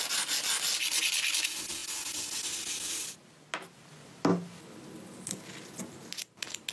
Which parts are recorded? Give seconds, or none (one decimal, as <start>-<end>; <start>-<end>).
0.0-6.7